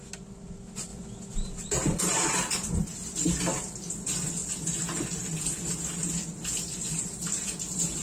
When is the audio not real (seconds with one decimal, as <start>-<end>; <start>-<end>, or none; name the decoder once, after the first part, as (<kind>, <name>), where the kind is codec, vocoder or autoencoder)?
0.9-2.0 (vocoder, BigVGAN v2); 4.4-5.4